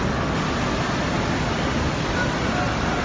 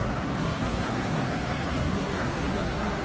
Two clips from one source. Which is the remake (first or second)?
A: second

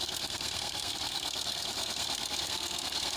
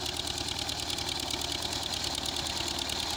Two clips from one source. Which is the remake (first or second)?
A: first